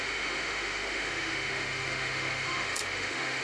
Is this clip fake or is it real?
fake